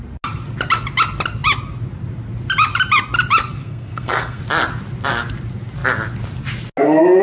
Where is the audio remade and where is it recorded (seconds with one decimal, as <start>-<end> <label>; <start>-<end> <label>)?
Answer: 0.0-3.6 recorded; 3.6-4.4 remade; 4.4-7.2 recorded